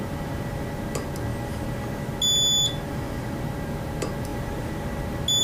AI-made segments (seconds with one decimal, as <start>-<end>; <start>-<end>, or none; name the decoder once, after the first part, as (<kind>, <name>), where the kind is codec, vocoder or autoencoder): none